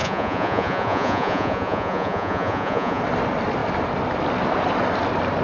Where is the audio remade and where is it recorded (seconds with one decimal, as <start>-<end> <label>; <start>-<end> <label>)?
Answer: 0.0-3.0 remade; 3.0-5.4 recorded